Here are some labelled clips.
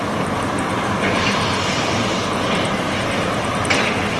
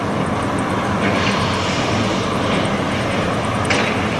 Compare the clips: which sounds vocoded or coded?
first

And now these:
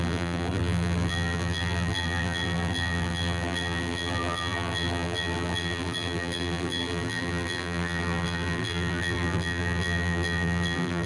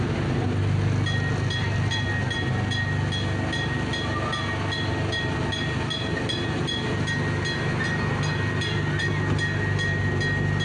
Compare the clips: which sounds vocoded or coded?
first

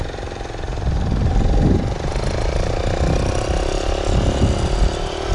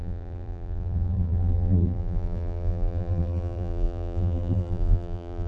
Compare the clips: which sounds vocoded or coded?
second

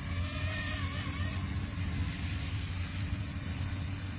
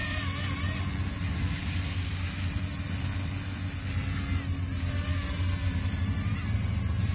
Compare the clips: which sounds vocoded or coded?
first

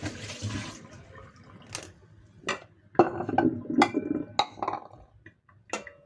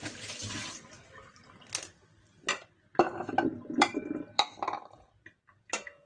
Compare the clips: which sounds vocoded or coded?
second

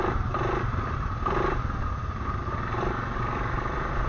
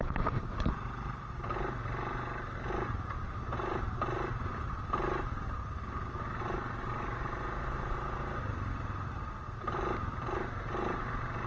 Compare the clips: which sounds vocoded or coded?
first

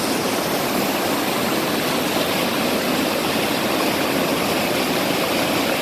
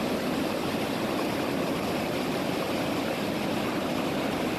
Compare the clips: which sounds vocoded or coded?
second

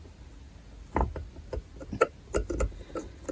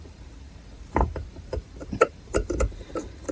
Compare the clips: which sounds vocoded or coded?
second